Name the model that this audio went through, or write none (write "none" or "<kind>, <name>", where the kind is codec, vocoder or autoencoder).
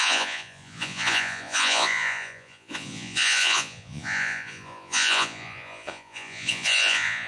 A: vocoder, Vocos